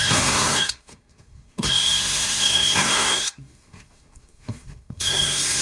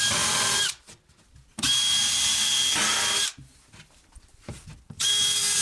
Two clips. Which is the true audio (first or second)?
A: second